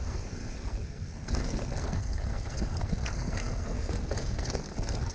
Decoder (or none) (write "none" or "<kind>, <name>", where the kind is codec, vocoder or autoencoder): codec, SNAC